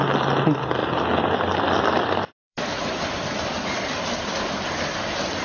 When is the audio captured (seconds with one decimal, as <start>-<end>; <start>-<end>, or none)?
0.0-0.8; 3.8-5.4